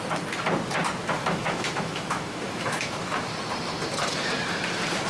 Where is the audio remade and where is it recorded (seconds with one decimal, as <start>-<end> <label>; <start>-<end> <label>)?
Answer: 0.0-1.2 recorded; 1.2-3.1 remade; 3.1-5.1 recorded